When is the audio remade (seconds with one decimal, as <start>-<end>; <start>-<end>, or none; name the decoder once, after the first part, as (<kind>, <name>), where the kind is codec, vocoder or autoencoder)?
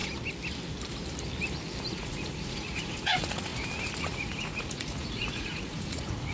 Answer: 1.8-3.5 (vocoder, Vocos); 4.0-6.3